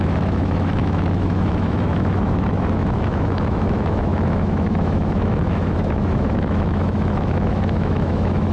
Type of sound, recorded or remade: remade